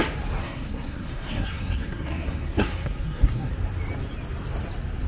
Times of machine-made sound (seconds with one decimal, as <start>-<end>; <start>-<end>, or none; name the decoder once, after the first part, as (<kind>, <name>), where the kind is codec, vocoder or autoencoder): 0.4-3.5 (codec, SNAC)